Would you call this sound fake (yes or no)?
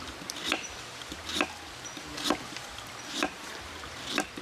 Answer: yes